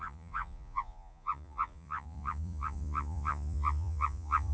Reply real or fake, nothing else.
fake